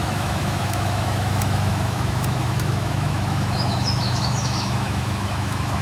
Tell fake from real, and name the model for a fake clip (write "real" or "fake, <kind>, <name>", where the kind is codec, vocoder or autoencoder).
fake, autoencoder, DAC-VAE